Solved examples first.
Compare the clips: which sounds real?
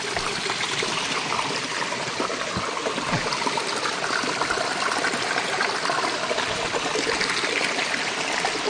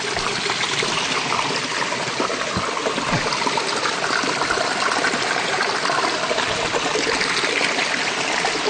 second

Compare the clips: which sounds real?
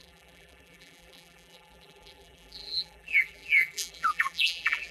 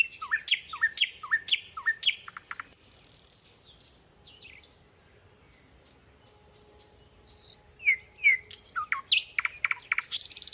second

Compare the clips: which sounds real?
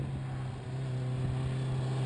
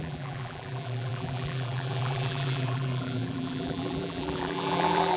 first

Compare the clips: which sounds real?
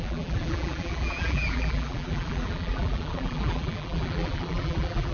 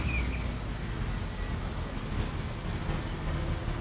second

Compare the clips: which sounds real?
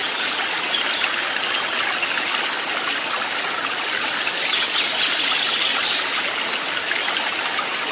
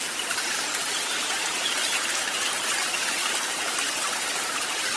first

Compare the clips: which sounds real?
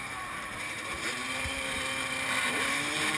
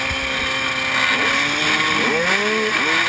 second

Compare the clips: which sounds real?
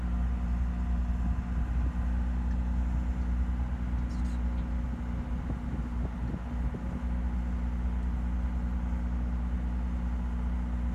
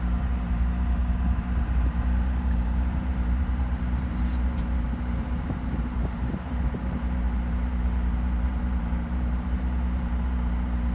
first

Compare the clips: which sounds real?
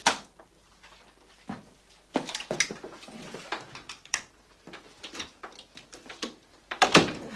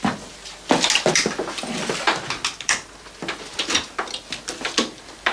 second